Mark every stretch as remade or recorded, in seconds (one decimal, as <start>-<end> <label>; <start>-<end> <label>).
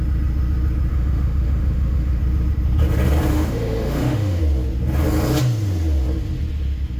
0.0-0.9 recorded; 0.9-2.2 remade; 2.2-3.3 recorded; 3.3-4.4 remade; 4.4-7.0 recorded